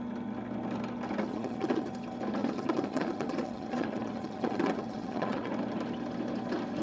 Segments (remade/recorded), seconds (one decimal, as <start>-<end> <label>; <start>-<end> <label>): 0.0-1.3 recorded; 1.3-1.9 remade; 1.9-2.4 recorded; 2.4-5.5 remade; 5.5-6.8 recorded